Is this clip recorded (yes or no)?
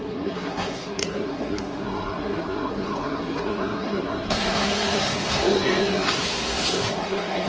no